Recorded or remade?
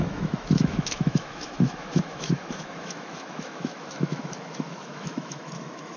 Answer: remade